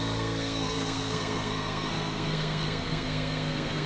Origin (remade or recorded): remade